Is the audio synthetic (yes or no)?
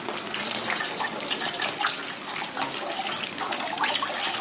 no